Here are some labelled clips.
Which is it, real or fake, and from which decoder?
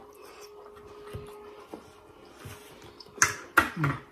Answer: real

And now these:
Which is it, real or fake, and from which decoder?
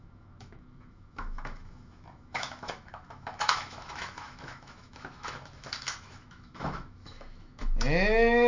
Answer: fake, autoencoder, DAC-VAE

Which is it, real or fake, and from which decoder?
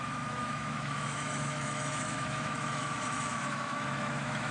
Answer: fake, autoencoder, DAC-VAE